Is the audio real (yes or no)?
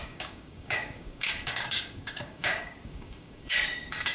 no